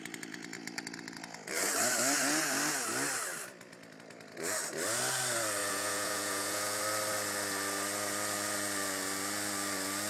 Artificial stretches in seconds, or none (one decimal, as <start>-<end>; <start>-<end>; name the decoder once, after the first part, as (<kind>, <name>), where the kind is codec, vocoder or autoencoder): 5.6-6.8 (vocoder, Vocos)

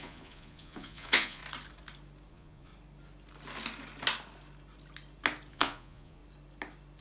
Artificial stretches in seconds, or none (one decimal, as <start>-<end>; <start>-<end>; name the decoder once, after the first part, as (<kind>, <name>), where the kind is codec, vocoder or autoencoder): 0.0-1.4 (vocoder, Vocos); 2.3-2.7; 5.5-6.2

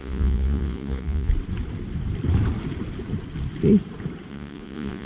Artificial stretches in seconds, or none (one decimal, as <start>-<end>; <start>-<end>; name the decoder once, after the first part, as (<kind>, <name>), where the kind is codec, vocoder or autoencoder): 0.0-1.3 (vocoder, Vocos); 4.3-5.1

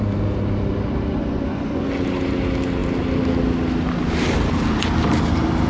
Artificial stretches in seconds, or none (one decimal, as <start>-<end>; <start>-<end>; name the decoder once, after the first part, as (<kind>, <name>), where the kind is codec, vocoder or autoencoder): 1.2-1.8 (vocoder, Vocos)

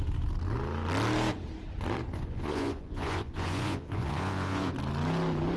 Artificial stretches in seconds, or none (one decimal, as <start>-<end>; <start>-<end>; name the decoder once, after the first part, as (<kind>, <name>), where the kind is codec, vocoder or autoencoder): 2.1-4.7 (vocoder, Vocos)